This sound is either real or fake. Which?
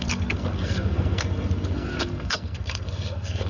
fake